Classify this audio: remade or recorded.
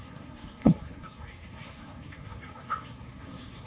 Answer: remade